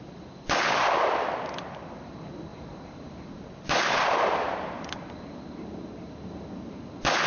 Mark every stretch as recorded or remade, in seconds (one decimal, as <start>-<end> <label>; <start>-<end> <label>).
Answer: 0.0-2.5 recorded; 2.5-5.1 remade; 5.1-7.3 recorded